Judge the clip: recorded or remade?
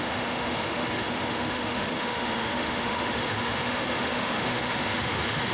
remade